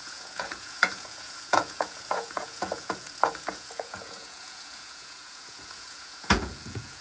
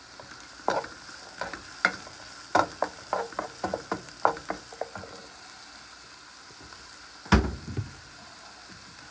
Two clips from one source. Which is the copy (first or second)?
first